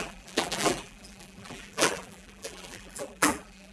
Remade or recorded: remade